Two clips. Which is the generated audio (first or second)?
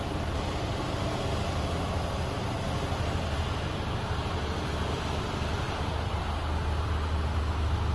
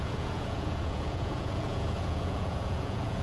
second